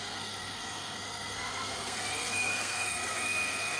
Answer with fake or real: fake